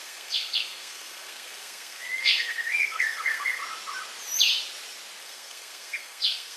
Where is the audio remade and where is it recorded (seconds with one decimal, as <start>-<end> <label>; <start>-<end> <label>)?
0.0-3.6 remade; 3.6-5.2 recorded; 5.2-6.6 remade